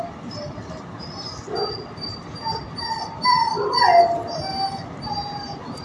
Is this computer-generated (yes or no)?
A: no